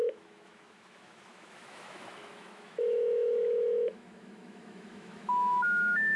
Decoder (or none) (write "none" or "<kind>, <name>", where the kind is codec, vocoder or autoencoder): autoencoder, DAC-VAE